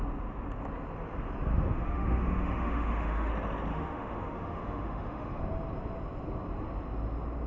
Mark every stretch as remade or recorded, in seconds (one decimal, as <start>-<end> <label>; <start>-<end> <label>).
0.0-1.5 recorded; 1.5-3.3 remade; 3.3-3.7 recorded; 3.7-5.4 remade; 5.4-7.5 recorded